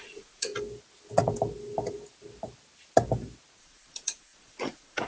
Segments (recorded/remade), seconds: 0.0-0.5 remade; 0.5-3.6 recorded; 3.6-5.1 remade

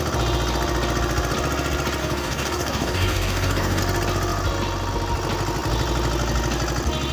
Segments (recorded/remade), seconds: 0.0-2.0 recorded; 2.0-3.8 remade; 3.8-7.1 recorded

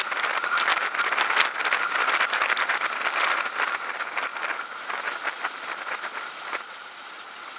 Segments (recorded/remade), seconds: 0.0-4.3 remade; 4.3-6.2 recorded; 6.2-7.6 remade

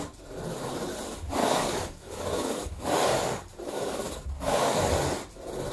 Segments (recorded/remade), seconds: 0.0-1.4 recorded; 1.4-4.8 remade; 4.8-5.7 recorded

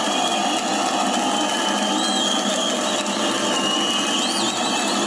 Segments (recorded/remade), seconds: 0.0-5.1 recorded

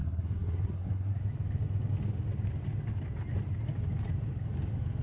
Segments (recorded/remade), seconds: 0.0-1.2 remade; 1.2-5.0 recorded

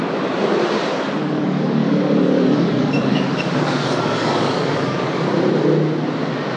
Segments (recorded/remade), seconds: 0.0-1.2 recorded; 1.2-5.2 remade; 5.2-6.6 recorded